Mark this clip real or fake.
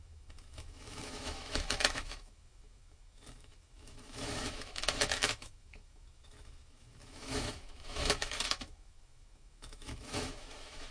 fake